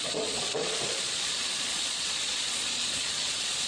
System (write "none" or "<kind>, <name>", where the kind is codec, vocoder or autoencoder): vocoder, Vocos